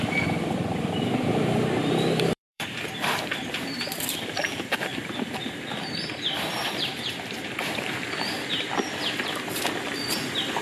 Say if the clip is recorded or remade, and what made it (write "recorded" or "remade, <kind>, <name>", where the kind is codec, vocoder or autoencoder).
remade, vocoder, BigVGAN v2